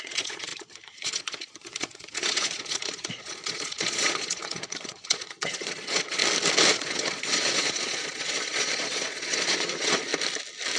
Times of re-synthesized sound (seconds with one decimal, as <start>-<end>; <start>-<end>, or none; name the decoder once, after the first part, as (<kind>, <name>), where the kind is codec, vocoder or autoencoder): 0.0-6.2 (vocoder, Vocos); 6.7-10.1